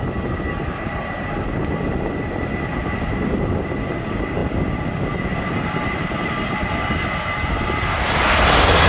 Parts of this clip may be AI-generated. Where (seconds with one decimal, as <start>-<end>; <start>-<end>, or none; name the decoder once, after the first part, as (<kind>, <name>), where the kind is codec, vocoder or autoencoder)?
2.8-3.7 (vocoder, BigVGAN v2); 4.4-7.1